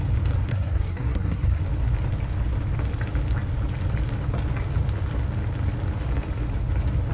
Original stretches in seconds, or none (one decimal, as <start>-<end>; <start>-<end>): 0.0-0.5; 1.6-7.1